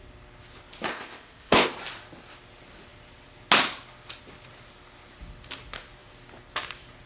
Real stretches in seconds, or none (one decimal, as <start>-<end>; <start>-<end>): 0.0-0.9; 1.7-7.1